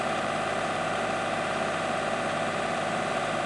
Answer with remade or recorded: remade